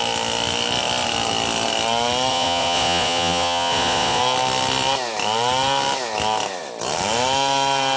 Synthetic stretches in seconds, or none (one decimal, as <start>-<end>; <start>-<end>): 2.3-4.2